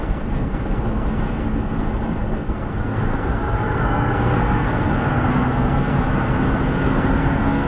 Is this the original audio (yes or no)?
no